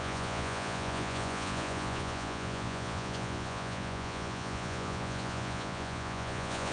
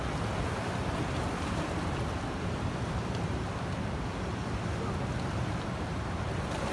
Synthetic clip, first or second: first